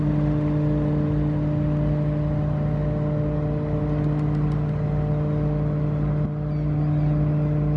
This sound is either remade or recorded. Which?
recorded